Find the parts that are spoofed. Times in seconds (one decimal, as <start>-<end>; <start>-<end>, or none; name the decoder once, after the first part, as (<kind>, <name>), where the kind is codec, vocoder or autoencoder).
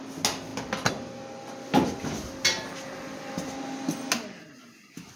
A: none